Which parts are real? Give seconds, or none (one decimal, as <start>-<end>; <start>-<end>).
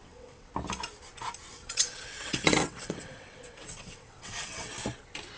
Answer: 0.5-1.5; 4.7-5.4